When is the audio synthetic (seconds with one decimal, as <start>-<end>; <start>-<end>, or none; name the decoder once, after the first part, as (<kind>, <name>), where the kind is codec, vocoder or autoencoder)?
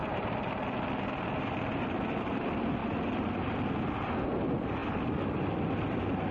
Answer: 0.0-0.5 (vocoder, BigVGAN v2); 2.8-3.6